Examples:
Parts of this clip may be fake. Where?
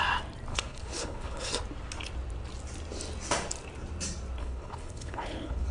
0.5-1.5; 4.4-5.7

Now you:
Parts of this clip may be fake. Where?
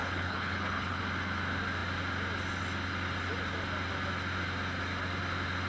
0.0-1.0